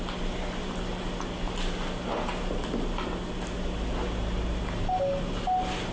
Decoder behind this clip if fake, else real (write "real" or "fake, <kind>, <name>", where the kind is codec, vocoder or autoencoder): real